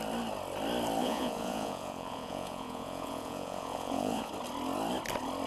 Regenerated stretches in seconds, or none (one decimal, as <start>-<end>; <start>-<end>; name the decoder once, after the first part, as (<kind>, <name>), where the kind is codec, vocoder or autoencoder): 1.0-4.3 (vocoder, Vocos)